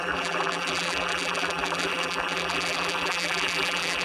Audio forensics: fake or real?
fake